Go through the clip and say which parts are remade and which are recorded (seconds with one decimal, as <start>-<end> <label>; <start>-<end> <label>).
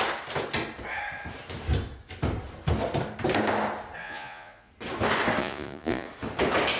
0.0-4.0 recorded; 4.0-4.7 remade; 4.7-5.4 recorded; 5.4-6.1 remade; 6.1-6.8 recorded